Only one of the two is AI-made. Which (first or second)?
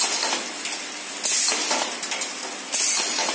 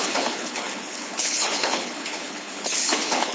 second